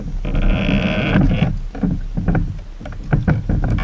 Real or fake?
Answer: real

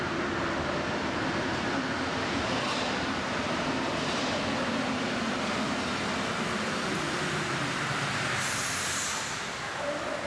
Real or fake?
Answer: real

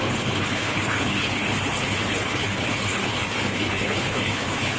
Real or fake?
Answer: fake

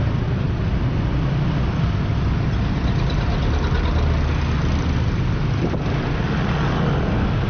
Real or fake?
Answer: real